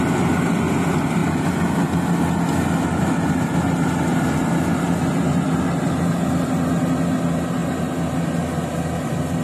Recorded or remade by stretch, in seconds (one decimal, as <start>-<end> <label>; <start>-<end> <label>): 0.0-9.4 recorded